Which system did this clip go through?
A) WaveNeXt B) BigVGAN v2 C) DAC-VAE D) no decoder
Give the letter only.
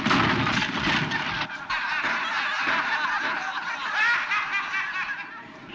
D